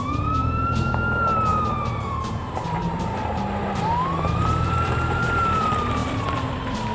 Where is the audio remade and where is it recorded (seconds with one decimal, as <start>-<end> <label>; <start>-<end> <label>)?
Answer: 0.0-6.9 remade